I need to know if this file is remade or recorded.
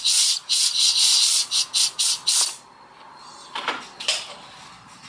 recorded